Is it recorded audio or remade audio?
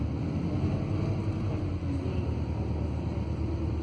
recorded